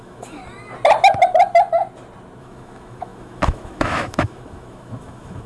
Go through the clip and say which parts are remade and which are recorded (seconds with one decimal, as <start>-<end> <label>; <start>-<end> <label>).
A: 0.0-0.4 remade; 0.4-2.4 recorded; 2.4-5.5 remade

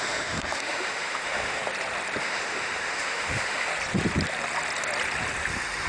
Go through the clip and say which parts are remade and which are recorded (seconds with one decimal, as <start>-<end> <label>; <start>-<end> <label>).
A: 0.0-1.6 remade; 1.6-2.2 recorded; 2.2-3.7 remade; 3.7-5.5 recorded; 5.5-5.9 remade